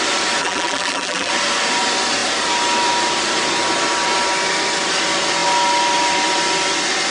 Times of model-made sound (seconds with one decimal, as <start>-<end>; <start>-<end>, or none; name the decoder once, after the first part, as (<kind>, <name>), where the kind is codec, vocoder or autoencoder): 0.4-1.3 (vocoder, BigVGAN v2)